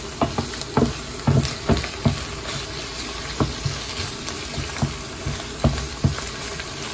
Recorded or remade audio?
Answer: recorded